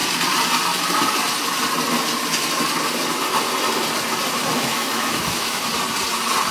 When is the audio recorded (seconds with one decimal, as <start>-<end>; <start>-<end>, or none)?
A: 0.0-4.5; 5.6-6.5